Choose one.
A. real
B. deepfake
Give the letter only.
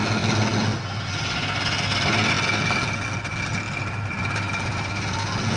A